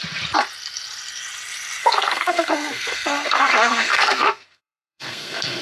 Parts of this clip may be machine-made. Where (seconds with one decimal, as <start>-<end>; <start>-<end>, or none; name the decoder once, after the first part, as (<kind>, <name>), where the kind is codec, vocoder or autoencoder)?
1.8-5.6 (codec, SNAC)